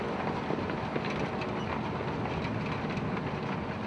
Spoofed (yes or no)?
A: no